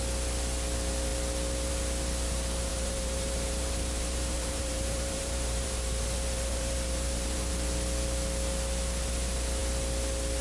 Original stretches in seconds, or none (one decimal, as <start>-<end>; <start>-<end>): 0.0-2.7; 7.5-10.4